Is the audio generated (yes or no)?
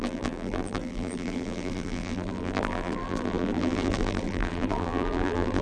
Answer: yes